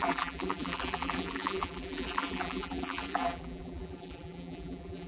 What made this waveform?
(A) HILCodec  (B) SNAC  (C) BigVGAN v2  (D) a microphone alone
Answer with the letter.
C